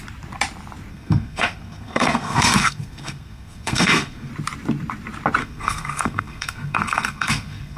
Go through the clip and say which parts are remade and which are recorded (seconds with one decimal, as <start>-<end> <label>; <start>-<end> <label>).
0.0-0.9 recorded; 0.9-4.3 remade; 4.3-5.4 recorded; 5.4-7.8 remade